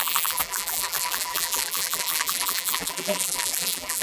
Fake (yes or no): yes